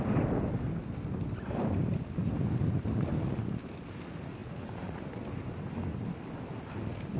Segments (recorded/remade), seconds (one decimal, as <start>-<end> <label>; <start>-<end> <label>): 0.0-4.4 recorded; 4.4-5.0 remade; 5.0-7.2 recorded